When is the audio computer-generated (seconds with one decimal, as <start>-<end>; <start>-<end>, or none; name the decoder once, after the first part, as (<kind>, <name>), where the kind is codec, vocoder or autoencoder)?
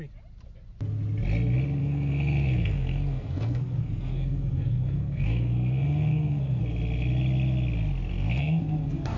1.8-6.6 (codec, SNAC); 8.1-9.2